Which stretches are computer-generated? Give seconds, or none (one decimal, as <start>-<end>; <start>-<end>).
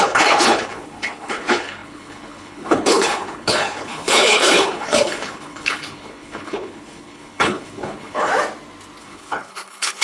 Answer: 0.0-8.3; 9.0-10.0